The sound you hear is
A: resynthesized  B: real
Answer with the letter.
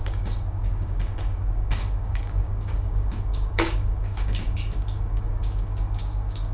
A